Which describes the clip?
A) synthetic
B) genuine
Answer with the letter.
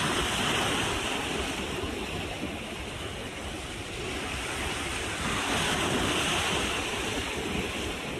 B